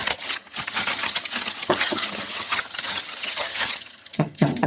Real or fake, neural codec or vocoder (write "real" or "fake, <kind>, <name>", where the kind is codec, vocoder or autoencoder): fake, vocoder, HiFi-GAN